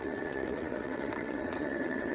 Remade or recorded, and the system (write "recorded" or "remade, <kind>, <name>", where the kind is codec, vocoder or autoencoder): remade, vocoder, WaveNeXt